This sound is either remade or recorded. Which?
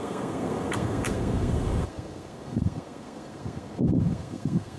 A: remade